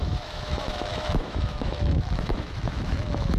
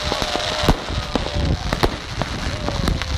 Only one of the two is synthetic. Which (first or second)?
first